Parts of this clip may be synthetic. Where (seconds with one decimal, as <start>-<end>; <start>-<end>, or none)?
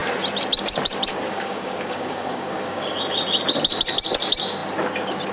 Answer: 1.1-2.9